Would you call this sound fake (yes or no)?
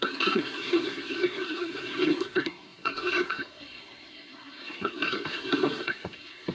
yes